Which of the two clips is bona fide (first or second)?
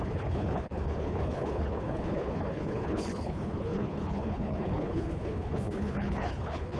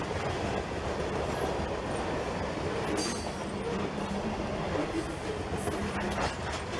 second